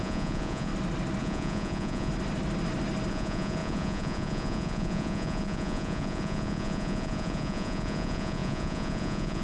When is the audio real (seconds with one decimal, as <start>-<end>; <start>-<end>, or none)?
0.7-1.2; 2.1-3.1